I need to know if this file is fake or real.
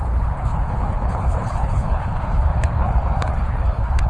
fake